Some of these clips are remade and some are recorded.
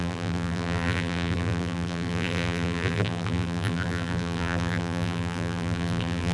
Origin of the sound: remade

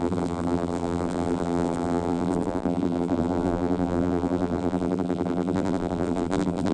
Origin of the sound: remade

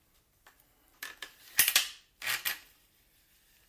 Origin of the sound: recorded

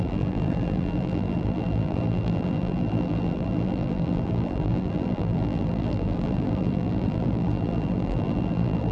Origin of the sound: remade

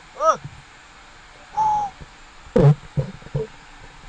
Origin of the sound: recorded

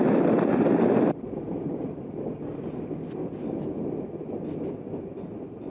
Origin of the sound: remade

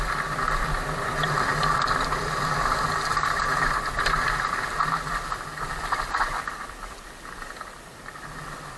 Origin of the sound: remade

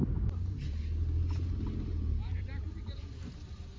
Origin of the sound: recorded